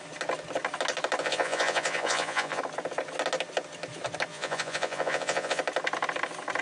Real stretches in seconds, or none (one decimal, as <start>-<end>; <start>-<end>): 0.0-1.2; 2.6-4.3; 5.6-6.6

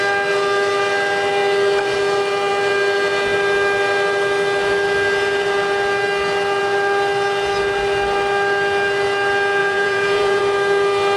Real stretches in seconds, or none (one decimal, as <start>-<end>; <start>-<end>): 0.0-9.6; 10.4-11.2

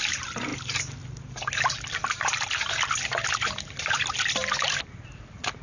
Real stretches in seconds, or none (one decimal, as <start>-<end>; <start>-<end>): 0.0-5.6

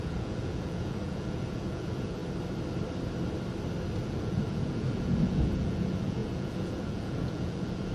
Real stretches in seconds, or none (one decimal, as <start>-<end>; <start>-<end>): 2.2-4.0

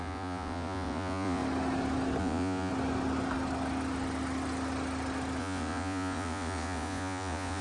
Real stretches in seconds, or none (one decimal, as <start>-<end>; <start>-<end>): 1.4-2.2; 2.7-5.4

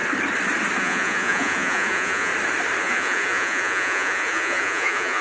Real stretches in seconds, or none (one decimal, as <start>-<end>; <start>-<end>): 0.0-0.8; 2.3-2.8

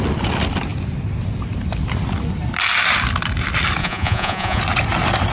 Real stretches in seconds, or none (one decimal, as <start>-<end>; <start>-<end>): 0.0-3.8; 4.6-5.3